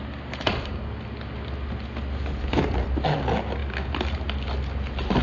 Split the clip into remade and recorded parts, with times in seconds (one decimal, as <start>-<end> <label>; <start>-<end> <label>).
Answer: 0.0-5.2 recorded

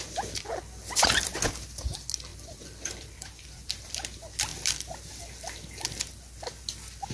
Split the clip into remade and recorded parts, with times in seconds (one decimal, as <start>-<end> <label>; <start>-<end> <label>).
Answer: 0.0-2.3 recorded; 2.3-3.9 remade; 3.9-7.1 recorded

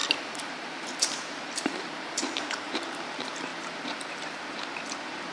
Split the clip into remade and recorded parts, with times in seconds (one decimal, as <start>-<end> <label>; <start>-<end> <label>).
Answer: 0.0-5.3 remade

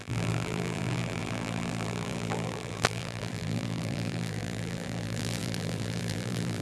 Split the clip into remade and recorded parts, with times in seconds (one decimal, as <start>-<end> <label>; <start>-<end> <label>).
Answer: 0.0-6.6 remade

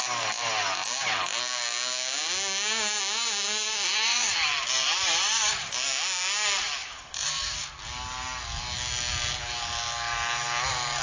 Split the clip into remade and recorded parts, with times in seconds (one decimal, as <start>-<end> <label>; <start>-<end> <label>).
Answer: 0.0-3.8 recorded; 3.8-5.5 remade; 5.5-6.8 recorded; 6.8-7.7 remade; 7.7-11.0 recorded

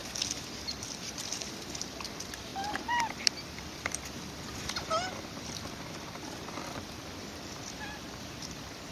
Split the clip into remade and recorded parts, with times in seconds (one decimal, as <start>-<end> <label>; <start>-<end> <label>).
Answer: 0.0-0.7 recorded; 0.7-8.9 remade

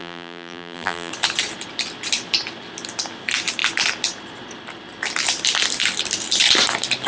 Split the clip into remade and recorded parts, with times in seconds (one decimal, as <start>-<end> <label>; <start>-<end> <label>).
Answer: 0.0-1.1 remade; 1.1-7.1 recorded